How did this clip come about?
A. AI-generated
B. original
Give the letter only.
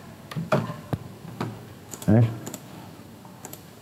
A